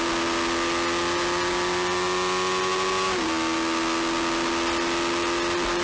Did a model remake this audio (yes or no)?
no